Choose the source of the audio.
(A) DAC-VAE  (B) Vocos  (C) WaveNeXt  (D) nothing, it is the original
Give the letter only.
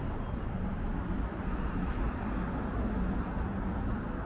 D